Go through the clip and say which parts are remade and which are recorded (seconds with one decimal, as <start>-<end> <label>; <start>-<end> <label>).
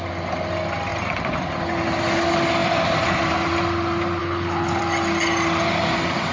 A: 0.0-4.2 recorded; 4.2-4.8 remade; 4.8-6.3 recorded